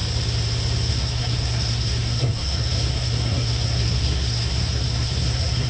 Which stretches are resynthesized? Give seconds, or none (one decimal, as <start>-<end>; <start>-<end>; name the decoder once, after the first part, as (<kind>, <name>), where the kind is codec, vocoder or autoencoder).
0.9-5.7 (codec, SNAC)